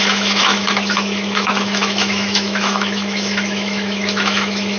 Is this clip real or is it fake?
fake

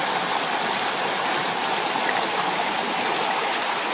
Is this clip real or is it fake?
real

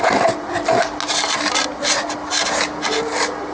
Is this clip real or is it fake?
real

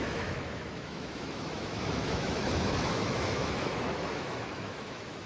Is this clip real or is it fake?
fake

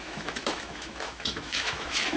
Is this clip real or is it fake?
fake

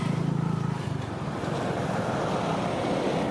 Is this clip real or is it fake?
real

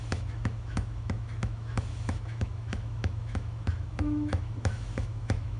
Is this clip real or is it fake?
fake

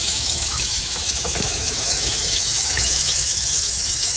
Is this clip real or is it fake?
fake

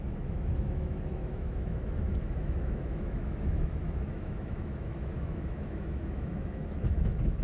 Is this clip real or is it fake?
fake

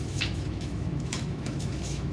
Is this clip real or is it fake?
fake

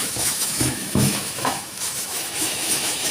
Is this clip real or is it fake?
fake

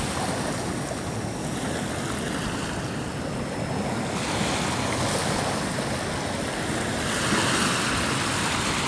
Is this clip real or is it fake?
real